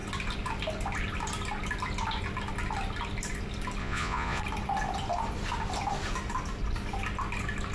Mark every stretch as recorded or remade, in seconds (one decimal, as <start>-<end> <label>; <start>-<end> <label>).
0.0-3.8 recorded; 3.8-4.4 remade; 4.4-7.7 recorded